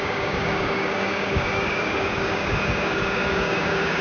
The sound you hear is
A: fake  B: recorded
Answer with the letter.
A